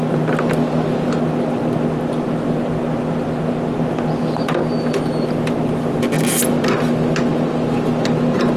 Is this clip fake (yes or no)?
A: no